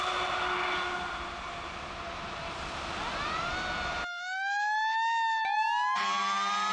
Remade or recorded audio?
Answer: recorded